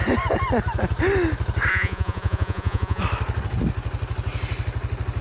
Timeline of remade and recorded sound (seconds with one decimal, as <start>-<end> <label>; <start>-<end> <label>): 0.0-1.7 recorded; 1.7-3.0 remade; 3.0-5.2 recorded